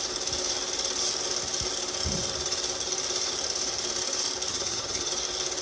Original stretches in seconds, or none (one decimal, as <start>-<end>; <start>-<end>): 0.0-4.5; 5.1-5.6